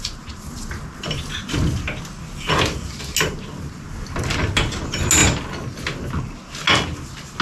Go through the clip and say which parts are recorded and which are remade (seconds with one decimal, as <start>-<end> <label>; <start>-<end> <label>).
0.0-7.4 recorded